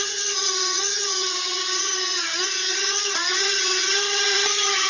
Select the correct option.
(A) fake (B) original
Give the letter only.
A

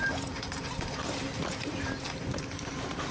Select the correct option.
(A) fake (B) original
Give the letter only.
A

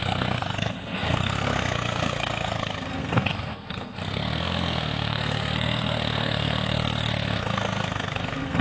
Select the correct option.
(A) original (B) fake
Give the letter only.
B